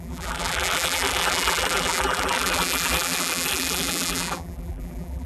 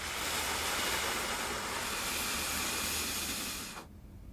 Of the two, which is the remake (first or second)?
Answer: first